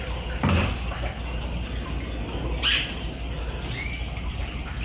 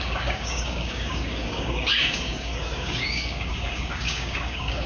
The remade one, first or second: second